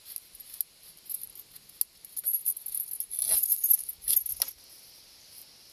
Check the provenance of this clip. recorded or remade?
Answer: recorded